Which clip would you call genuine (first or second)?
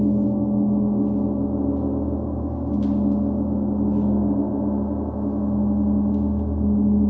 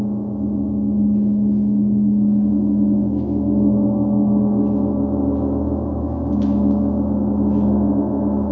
first